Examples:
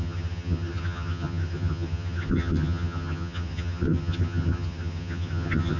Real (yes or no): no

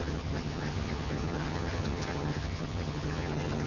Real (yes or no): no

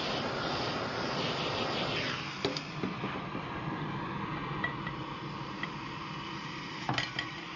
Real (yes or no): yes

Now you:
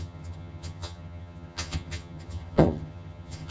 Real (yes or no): no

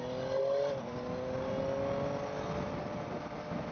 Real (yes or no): yes